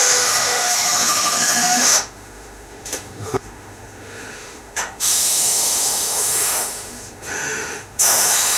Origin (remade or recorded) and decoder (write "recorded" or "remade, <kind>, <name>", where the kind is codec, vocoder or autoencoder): remade, autoencoder, DAC-VAE